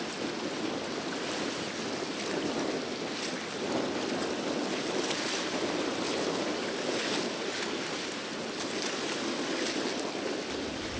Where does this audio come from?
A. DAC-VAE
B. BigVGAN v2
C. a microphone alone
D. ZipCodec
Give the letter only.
C